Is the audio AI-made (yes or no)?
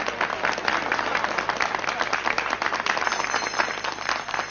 no